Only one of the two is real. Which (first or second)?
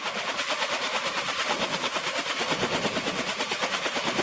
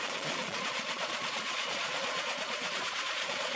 first